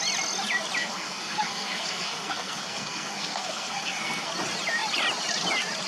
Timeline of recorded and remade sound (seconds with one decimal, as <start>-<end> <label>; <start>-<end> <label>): 0.0-0.8 recorded; 0.8-4.3 remade; 4.3-5.9 recorded